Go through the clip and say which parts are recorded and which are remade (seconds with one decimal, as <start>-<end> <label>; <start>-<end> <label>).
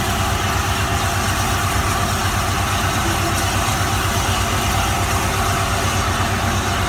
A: 0.0-6.9 recorded